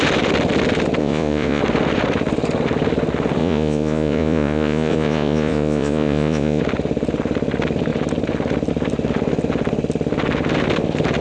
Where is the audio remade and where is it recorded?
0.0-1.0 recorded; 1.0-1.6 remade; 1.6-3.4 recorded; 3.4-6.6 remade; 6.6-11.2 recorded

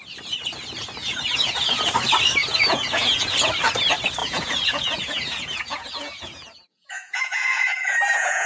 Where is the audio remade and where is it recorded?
0.0-1.0 recorded; 1.0-1.9 remade; 1.9-2.4 recorded; 2.4-3.5 remade; 3.5-4.2 recorded; 4.2-8.5 remade

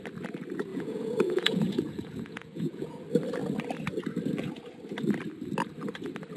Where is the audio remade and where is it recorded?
0.0-0.7 recorded; 0.7-3.0 remade; 3.0-6.4 recorded

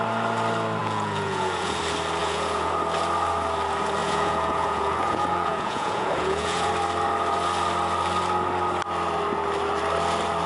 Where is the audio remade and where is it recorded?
0.0-0.8 recorded; 0.8-1.8 remade; 1.8-2.2 recorded; 2.2-2.7 remade; 2.7-4.0 recorded; 4.0-6.7 remade; 6.7-10.5 recorded

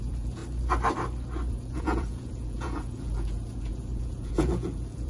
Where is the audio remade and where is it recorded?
0.0-0.4 remade; 0.4-1.5 recorded; 1.5-5.1 remade